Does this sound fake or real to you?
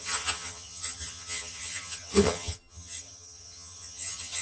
fake